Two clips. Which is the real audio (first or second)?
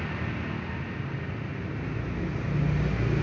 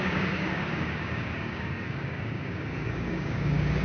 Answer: first